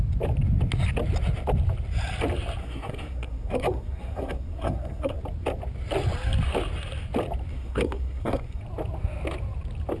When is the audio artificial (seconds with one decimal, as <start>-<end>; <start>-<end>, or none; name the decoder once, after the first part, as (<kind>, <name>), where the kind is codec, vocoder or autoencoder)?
2.6-5.2 (codec, SNAC); 7.5-8.6

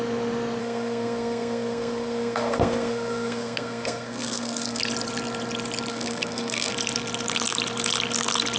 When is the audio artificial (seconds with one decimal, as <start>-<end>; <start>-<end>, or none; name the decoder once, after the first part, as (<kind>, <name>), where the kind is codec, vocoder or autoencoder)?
0.6-4.8 (codec, SNAC); 5.9-6.7

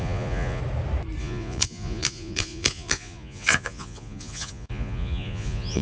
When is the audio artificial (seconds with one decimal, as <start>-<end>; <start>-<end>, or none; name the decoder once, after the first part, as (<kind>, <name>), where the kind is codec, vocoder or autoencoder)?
0.0-0.6 (vocoder, Vocos); 1.2-5.8

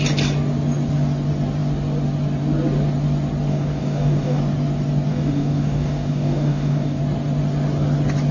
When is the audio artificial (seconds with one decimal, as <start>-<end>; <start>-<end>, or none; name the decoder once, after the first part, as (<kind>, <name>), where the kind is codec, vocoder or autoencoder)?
3.5-4.4 (codec, DAC); 5.1-7.0

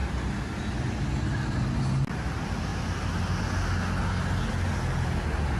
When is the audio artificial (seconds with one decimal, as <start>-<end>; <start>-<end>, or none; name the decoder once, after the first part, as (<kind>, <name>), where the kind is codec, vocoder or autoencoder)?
none